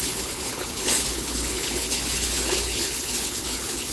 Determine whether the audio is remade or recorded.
remade